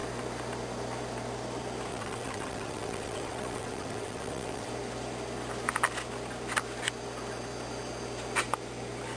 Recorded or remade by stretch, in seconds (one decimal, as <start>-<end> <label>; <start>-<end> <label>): 0.0-1.9 recorded; 1.9-4.7 remade; 4.7-9.2 recorded